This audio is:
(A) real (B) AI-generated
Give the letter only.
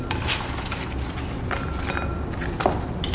A